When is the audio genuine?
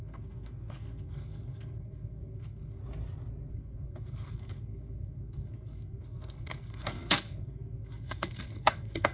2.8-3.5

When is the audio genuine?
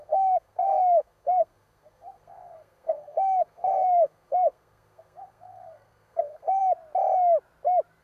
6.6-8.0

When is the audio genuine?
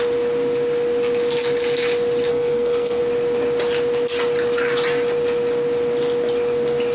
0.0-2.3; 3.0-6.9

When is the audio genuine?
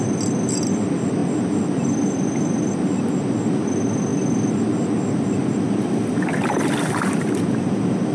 0.0-8.1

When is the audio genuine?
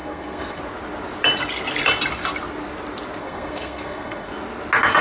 0.6-3.2; 4.3-5.0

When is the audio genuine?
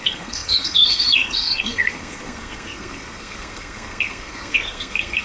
none